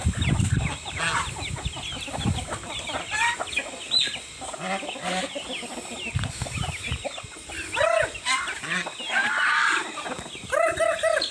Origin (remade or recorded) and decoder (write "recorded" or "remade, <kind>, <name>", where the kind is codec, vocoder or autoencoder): recorded